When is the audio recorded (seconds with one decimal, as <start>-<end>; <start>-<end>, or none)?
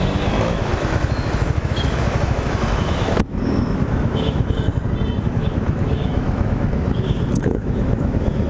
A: 4.7-5.2